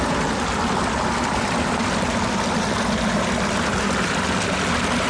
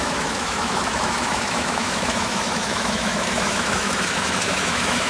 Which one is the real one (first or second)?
first